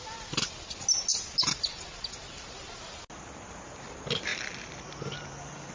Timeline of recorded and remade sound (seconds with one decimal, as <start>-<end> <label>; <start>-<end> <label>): 0.0-5.7 recorded